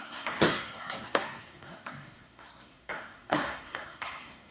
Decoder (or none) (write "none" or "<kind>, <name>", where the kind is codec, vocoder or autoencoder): codec, SNAC